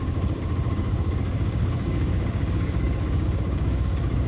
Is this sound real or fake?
fake